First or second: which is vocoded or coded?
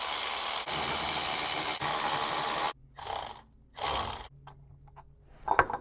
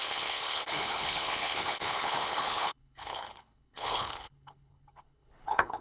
second